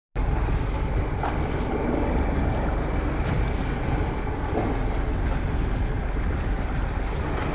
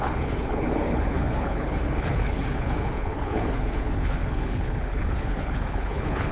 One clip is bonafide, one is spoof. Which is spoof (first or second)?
second